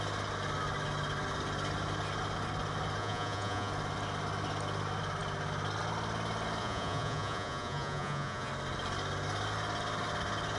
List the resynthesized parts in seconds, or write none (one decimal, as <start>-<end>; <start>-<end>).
3.0-3.7; 6.6-8.5